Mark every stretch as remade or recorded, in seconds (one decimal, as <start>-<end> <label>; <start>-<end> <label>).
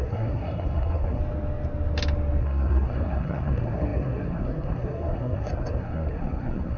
0.0-1.2 remade; 1.2-2.4 recorded; 2.4-6.8 remade